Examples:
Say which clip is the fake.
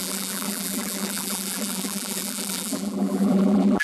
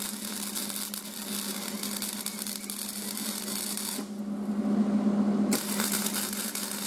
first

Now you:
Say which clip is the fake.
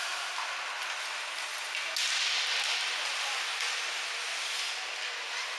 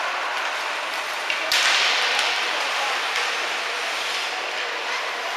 second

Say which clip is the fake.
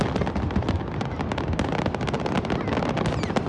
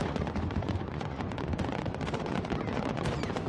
second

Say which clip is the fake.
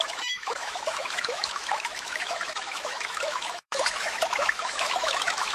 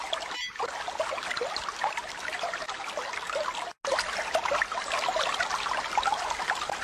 first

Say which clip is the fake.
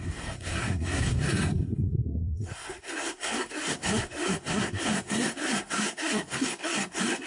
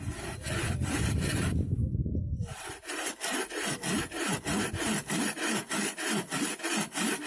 first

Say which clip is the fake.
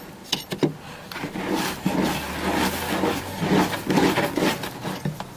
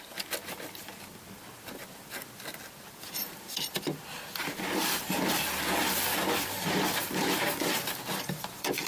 second